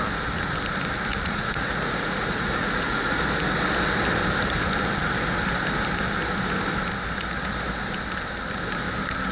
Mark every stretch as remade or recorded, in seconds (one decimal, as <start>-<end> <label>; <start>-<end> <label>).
0.0-1.1 recorded; 1.1-3.2 remade; 3.2-9.3 recorded